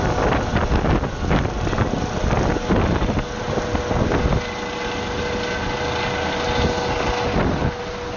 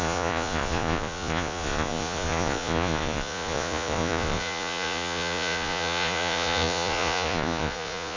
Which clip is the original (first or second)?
first